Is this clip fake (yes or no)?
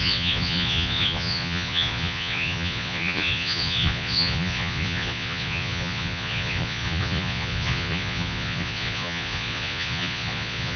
yes